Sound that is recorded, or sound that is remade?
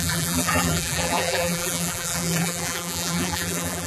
remade